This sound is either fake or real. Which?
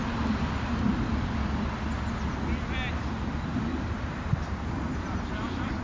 real